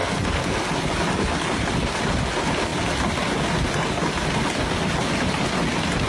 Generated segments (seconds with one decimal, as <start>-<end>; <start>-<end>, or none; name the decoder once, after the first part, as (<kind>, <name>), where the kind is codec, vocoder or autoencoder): 0.0-0.6 (codec, SNAC)